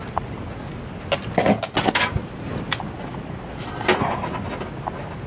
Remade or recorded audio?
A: recorded